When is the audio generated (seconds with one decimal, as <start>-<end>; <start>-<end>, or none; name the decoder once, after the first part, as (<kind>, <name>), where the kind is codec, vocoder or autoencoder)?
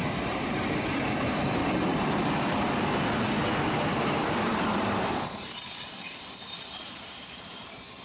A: 0.0-1.6 (vocoder, BigVGAN v2); 3.9-8.0